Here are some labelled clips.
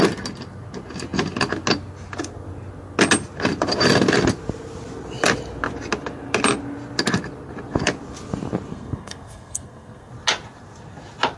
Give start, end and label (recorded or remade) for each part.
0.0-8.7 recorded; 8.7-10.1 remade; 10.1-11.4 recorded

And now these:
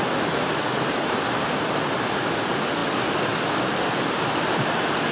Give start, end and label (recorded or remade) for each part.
0.0-5.1 recorded

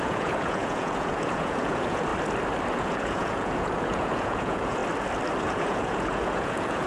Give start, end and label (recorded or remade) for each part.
0.0-2.1 remade; 2.1-2.7 recorded; 2.7-4.8 remade; 4.8-5.4 recorded; 5.4-6.9 remade